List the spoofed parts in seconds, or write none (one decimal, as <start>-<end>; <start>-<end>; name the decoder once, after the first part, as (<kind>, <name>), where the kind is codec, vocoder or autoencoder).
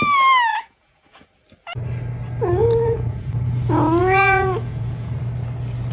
0.5-1.3 (vocoder, Vocos); 2.6-3.6; 4.0-5.1